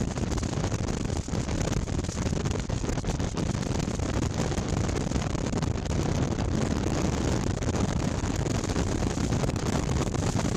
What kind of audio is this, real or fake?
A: fake